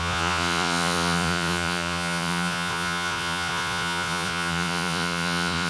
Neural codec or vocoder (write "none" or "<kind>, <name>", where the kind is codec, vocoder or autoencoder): vocoder, Vocos